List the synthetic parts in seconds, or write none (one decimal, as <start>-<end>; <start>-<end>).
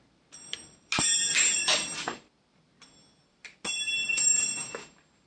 none